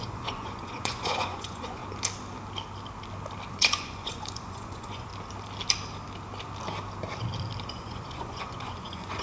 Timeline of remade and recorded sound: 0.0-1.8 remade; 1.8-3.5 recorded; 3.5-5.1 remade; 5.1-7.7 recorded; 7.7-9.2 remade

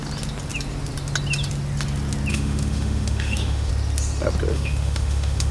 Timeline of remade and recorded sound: 0.0-2.3 recorded; 2.3-3.7 remade; 3.7-4.5 recorded; 4.5-5.5 remade

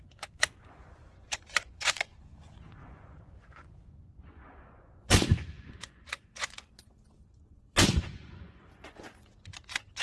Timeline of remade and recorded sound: 0.0-10.0 remade